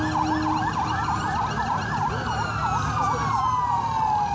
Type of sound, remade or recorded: recorded